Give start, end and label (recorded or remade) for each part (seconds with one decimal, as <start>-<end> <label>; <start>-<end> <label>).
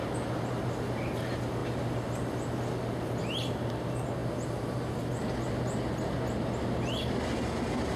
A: 0.0-8.0 recorded